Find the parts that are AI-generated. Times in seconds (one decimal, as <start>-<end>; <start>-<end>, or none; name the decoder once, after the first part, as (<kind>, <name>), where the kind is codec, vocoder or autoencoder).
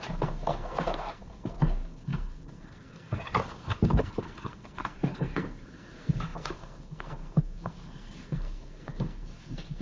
0.0-9.8 (codec, SNAC)